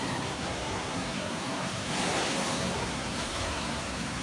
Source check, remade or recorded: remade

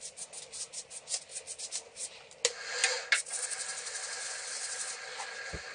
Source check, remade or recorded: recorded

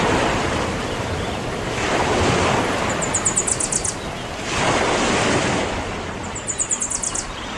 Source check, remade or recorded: recorded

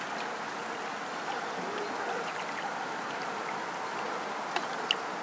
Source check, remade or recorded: recorded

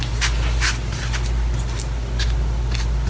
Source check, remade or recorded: recorded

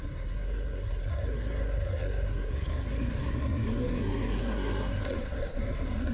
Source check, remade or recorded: remade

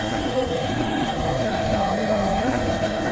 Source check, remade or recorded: remade